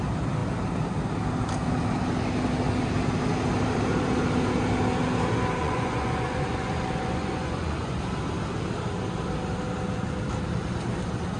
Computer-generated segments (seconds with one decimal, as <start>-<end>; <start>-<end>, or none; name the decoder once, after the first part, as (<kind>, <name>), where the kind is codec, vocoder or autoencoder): 5.6-8.0 (vocoder, Vocos)